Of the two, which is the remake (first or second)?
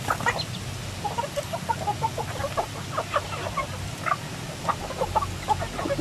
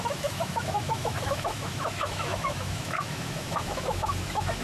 second